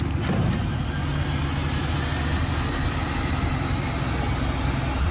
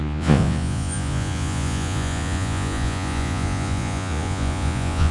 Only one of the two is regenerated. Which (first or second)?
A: second